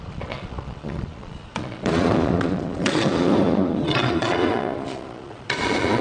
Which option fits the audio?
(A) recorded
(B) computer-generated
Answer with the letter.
B